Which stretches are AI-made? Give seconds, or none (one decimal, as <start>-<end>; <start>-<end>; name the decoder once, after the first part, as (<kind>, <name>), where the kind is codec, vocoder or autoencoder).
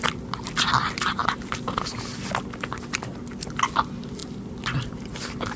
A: none